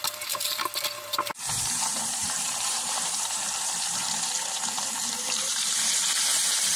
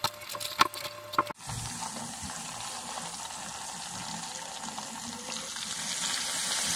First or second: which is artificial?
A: first